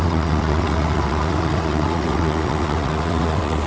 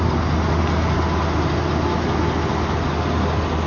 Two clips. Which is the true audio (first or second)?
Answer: second